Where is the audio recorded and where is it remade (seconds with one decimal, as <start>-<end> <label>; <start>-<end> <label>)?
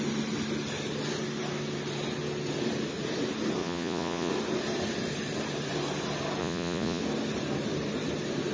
0.0-3.6 recorded; 3.6-4.3 remade; 4.3-6.4 recorded; 6.4-7.0 remade; 7.0-8.5 recorded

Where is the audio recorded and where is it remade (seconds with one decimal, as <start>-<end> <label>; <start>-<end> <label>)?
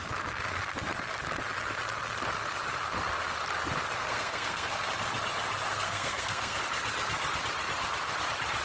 0.0-4.0 recorded; 4.0-4.8 remade; 4.8-5.7 recorded; 5.7-6.6 remade; 6.6-8.6 recorded